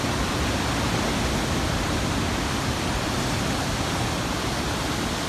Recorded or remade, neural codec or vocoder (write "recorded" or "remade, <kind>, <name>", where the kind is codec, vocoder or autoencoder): recorded